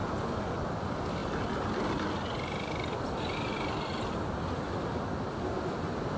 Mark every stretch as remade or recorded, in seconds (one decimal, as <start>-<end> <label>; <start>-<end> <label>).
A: 0.0-6.2 recorded